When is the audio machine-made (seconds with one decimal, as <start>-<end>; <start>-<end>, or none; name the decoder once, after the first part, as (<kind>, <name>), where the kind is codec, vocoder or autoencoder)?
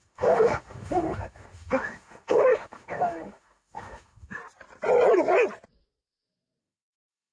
0.0-4.4 (autoencoder, DAC-VAE); 6.6-7.3